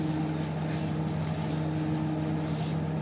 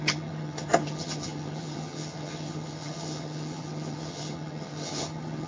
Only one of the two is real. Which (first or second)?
first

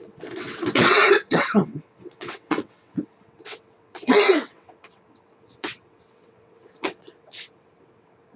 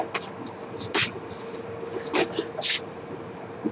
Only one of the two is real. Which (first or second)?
second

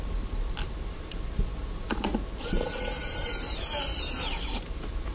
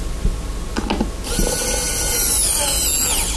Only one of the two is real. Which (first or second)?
second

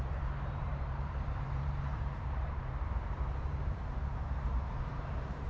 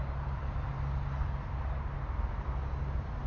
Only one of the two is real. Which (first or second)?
second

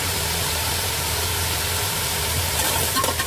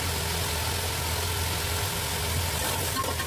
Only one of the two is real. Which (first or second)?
second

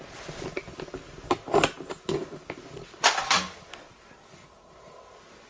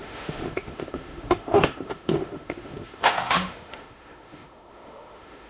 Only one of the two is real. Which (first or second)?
first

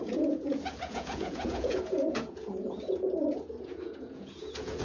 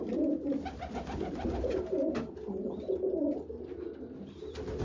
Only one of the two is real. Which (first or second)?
second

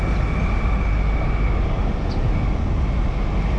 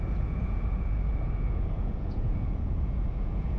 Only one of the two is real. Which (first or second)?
first